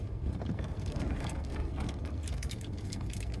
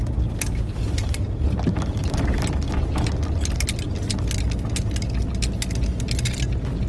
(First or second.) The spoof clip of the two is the first